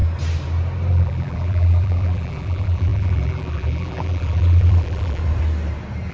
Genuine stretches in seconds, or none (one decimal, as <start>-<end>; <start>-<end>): 0.0-0.9; 5.2-6.1